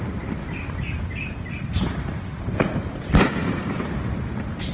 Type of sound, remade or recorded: recorded